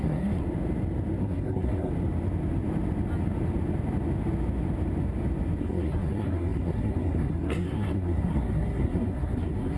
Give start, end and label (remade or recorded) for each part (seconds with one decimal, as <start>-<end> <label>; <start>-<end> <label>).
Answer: 0.0-0.4 remade; 0.4-1.2 recorded; 1.2-1.9 remade; 1.9-5.6 recorded; 5.6-9.8 remade